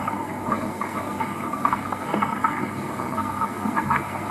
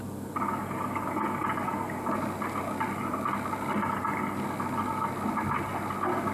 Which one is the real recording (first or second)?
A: second